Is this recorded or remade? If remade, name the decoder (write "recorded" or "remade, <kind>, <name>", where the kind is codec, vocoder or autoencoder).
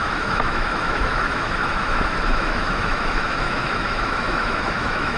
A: remade, autoencoder, DAC-VAE